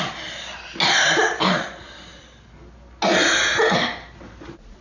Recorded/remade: recorded